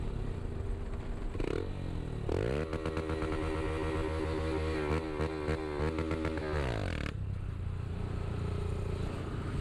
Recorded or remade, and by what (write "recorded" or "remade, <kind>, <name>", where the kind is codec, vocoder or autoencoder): recorded